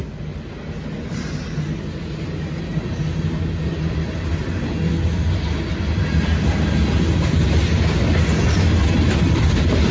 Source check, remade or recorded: recorded